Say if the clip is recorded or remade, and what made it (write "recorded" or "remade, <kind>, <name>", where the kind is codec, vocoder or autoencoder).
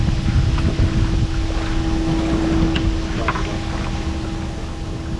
recorded